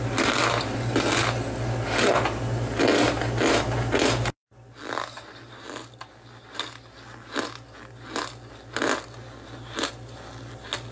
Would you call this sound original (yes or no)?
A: yes